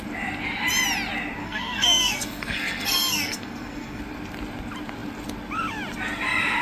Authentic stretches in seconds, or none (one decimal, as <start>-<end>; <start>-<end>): 0.0-1.4; 4.0-6.6